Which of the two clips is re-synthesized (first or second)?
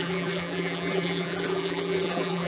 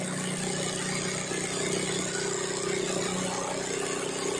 first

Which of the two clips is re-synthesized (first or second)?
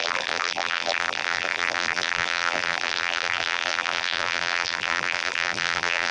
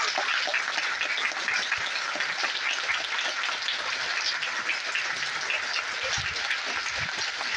first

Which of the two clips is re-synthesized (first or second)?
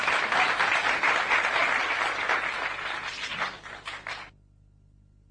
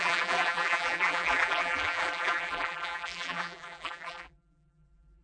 second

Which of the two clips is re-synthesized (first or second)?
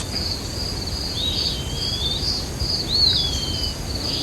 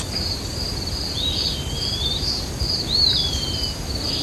second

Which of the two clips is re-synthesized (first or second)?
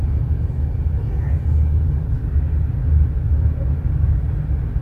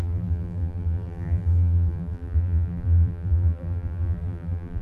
second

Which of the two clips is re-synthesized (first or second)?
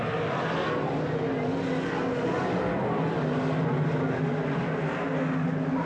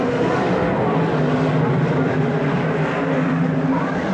second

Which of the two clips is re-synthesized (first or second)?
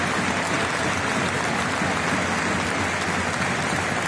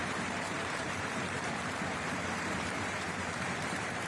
second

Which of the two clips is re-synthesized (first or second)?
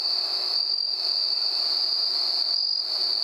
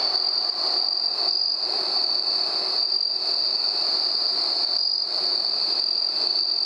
second